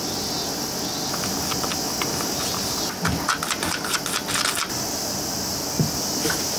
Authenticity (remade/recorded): recorded